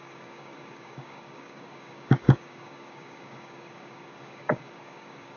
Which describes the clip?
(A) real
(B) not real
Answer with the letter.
B